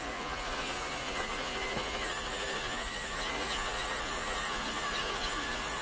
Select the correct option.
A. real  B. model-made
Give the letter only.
B